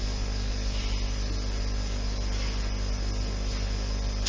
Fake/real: real